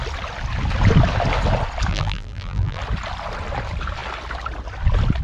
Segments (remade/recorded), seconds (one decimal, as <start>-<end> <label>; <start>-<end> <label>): 0.0-1.9 recorded; 1.9-2.8 remade; 2.8-5.2 recorded